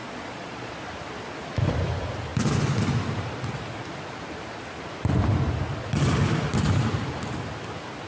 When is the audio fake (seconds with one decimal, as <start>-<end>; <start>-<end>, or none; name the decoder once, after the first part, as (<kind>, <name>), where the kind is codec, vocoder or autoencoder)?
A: 0.0-0.7 (vocoder, Vocos)